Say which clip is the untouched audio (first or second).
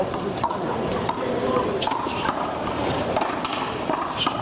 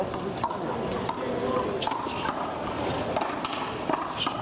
second